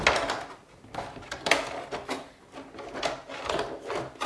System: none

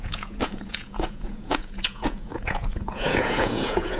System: vocoder, Vocos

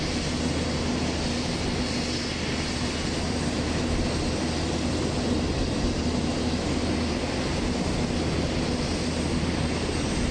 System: none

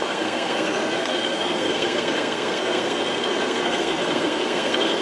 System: codec, SNAC